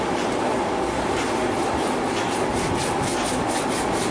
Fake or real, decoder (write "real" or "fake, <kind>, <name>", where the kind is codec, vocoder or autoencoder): real